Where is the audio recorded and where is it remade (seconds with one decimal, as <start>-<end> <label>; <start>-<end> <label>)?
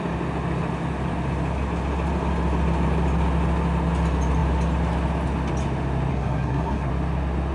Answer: 0.0-6.1 recorded; 6.1-6.9 remade; 6.9-7.5 recorded